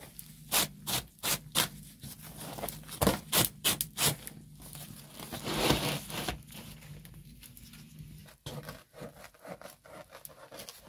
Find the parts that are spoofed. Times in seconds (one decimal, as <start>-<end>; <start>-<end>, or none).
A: none